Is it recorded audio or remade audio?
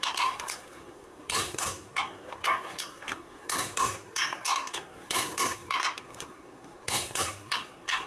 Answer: remade